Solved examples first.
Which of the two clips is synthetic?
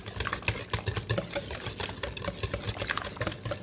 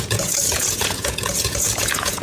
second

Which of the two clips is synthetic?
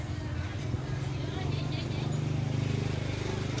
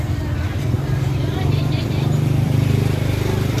second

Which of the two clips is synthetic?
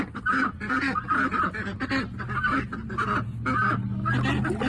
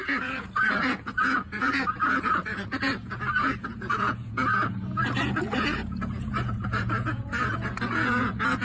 second